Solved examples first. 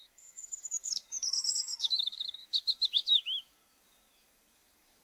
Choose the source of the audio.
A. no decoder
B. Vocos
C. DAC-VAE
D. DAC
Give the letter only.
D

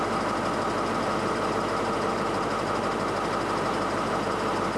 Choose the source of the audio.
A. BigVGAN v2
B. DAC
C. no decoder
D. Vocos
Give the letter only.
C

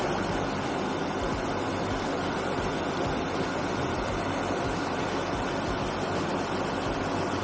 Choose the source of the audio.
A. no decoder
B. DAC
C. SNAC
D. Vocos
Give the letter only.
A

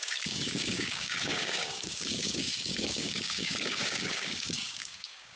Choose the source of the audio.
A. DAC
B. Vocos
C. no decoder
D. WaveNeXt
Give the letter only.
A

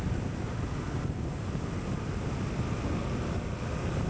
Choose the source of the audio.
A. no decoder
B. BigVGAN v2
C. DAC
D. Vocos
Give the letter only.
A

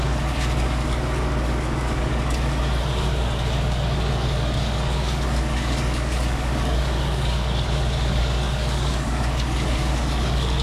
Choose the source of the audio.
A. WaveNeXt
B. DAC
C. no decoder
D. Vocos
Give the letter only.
B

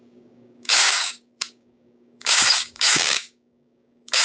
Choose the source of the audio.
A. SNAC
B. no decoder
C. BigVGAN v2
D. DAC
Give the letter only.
D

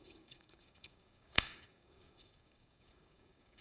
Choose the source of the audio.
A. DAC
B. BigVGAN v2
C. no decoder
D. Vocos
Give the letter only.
A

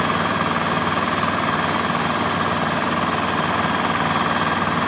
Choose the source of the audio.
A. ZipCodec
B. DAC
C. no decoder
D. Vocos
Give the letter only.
C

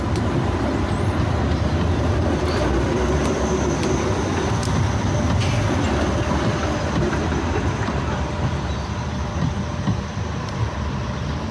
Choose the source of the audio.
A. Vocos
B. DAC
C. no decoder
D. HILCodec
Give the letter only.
C